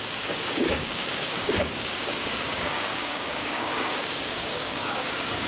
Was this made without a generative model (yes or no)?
no